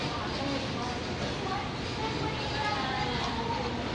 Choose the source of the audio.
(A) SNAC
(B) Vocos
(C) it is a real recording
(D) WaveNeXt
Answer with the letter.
C